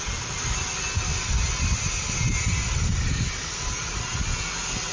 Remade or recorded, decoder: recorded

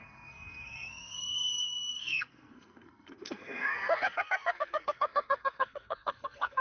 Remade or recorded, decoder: remade, codec, SNAC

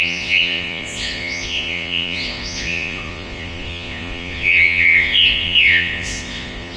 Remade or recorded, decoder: remade, vocoder, Vocos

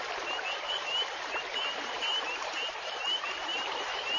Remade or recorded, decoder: recorded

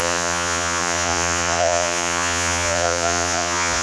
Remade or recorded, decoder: remade, vocoder, Vocos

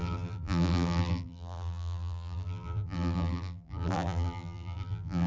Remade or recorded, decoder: remade, vocoder, BigVGAN v2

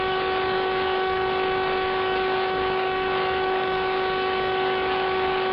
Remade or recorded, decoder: remade, codec, DAC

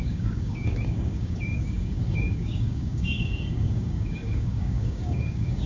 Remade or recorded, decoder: remade, codec, DAC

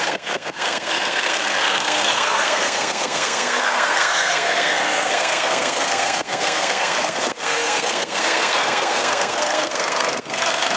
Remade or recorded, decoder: remade, codec, SNAC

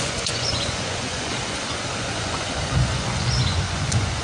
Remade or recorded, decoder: remade, vocoder, Vocos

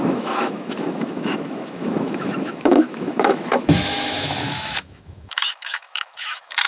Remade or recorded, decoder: remade, autoencoder, DAC-VAE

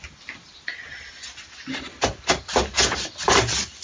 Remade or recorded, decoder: recorded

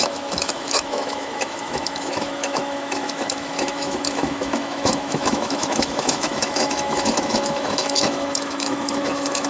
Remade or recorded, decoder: remade, autoencoder, DAC-VAE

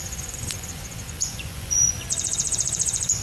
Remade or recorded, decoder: remade, vocoder, Vocos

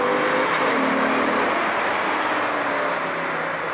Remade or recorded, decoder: recorded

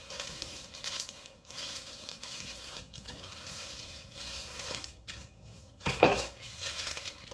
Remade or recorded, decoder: remade, codec, SNAC